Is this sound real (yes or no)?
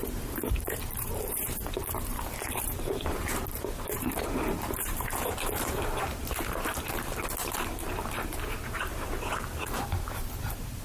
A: no